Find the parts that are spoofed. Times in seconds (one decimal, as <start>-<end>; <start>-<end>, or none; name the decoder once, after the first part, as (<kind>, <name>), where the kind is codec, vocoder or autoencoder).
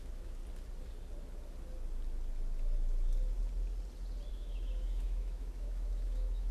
0.0-0.4 (autoencoder, DAC-VAE); 4.3-6.5